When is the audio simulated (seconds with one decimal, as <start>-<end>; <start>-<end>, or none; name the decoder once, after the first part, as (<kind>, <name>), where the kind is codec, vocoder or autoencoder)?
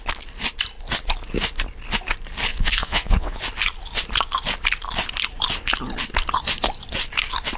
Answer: 2.5-3.4 (vocoder, Vocos)